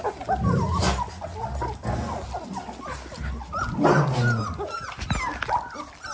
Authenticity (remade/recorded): recorded